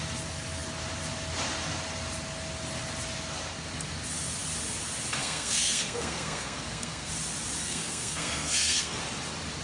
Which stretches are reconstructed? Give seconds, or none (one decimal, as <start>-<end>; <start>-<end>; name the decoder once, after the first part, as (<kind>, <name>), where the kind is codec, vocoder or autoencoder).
5.2-7.1 (codec, SNAC); 7.6-9.0

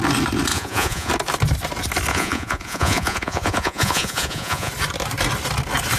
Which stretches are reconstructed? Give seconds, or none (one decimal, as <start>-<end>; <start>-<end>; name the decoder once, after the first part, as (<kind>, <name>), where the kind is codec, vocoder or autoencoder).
0.5-1.1 (vocoder, Vocos); 2.1-4.7

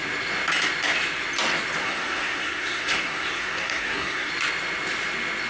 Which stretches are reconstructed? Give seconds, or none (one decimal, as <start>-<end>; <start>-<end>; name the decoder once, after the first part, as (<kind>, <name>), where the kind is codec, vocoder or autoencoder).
1.8-4.3 (codec, SNAC)

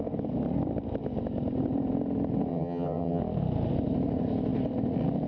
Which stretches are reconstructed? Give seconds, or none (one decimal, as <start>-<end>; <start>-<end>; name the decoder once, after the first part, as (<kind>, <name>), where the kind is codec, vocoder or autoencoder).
2.5-3.2 (vocoder, HiFi-GAN)

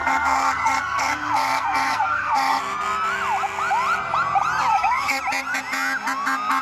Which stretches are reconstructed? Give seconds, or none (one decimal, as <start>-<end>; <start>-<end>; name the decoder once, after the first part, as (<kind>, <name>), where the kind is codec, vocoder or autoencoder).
0.0-2.6 (codec, SNAC); 4.7-5.2

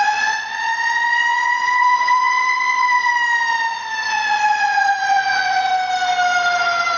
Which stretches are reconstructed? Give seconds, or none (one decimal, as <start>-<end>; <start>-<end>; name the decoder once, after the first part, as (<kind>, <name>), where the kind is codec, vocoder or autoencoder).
0.0-3.1 (vocoder, Vocos); 4.1-5.7

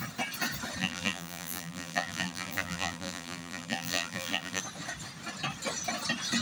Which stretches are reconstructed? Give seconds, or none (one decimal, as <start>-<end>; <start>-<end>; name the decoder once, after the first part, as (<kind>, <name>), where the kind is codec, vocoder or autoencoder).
0.8-4.6 (vocoder, BigVGAN v2)

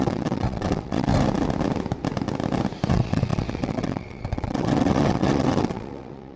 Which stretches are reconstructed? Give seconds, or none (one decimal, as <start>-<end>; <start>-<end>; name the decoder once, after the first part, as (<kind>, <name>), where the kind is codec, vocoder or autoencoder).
0.0-1.1 (vocoder, WaveNeXt); 2.9-6.4